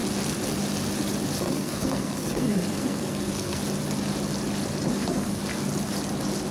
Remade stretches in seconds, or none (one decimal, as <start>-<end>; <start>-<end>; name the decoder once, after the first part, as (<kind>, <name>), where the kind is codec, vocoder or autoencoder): 1.4-3.6 (codec, SNAC); 4.9-5.4